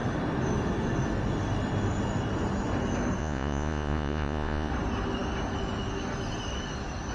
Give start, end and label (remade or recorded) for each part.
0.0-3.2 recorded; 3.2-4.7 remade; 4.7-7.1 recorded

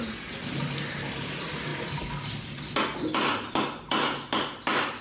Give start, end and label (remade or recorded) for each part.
0.0-5.0 recorded

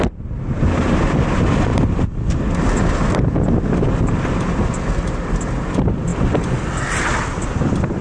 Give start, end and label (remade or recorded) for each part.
0.0-8.0 recorded